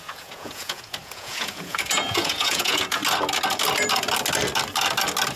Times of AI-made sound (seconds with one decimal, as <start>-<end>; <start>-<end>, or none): 0.0-3.0